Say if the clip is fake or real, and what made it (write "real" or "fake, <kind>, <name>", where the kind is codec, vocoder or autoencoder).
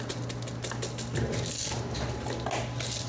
real